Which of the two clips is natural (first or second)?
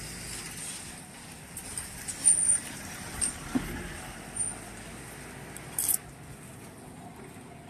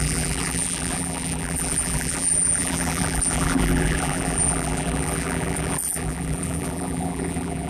first